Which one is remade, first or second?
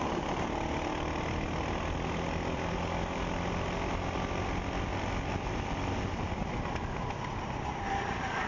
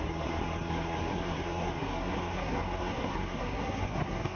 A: second